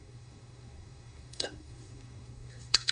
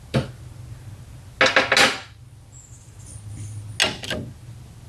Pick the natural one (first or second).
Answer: second